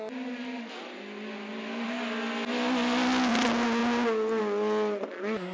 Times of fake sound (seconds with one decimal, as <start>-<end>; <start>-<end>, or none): none